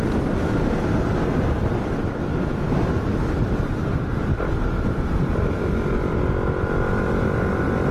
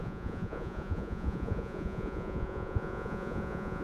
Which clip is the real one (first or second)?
first